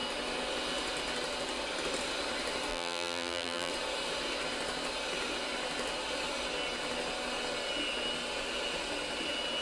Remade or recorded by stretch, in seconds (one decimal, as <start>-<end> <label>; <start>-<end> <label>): 0.0-2.7 recorded; 2.7-3.7 remade; 3.7-9.6 recorded